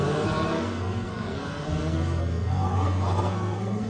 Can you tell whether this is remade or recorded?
remade